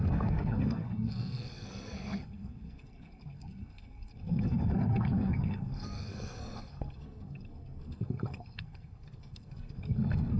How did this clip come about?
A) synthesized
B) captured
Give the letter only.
A